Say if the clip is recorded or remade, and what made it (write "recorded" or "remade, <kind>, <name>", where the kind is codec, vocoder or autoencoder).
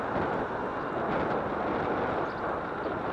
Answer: recorded